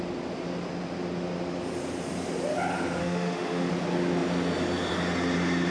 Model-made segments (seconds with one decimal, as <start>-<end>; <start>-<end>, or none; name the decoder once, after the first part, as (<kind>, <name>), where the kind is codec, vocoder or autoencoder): 3.0-3.7 (autoencoder, DAC-VAE)